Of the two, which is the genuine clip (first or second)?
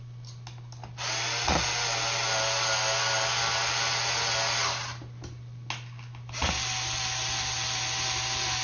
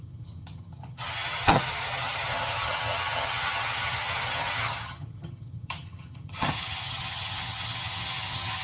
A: first